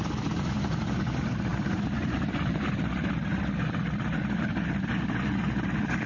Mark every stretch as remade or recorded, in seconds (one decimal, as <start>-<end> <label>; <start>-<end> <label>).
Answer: 0.0-1.5 recorded; 1.5-2.9 remade; 2.9-6.1 recorded